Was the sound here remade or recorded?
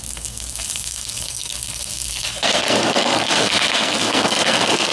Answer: remade